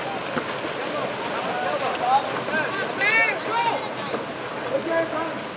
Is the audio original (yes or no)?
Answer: yes